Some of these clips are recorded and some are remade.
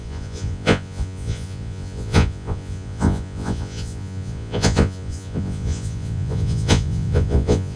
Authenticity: remade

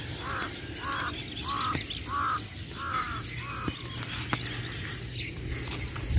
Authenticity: recorded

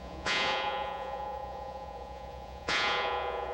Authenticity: remade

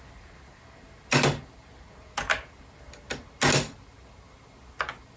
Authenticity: recorded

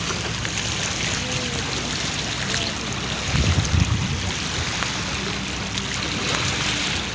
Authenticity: recorded